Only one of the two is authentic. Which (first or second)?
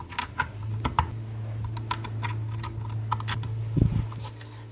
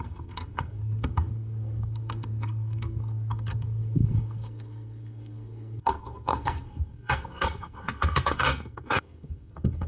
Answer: first